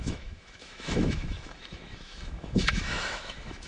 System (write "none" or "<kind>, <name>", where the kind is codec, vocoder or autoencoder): autoencoder, DAC-VAE